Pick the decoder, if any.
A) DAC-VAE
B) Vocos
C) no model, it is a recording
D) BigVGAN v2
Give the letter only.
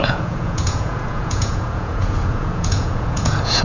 B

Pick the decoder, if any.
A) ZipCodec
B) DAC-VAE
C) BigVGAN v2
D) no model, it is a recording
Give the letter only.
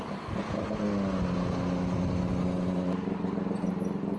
D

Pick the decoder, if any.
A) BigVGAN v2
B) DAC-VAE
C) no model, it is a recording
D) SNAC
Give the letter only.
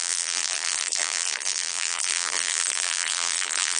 A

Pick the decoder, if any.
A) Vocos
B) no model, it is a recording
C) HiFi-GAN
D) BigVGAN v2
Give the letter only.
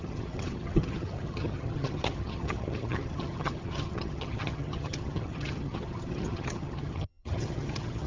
C